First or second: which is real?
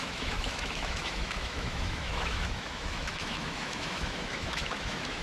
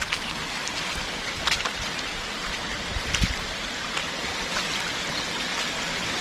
second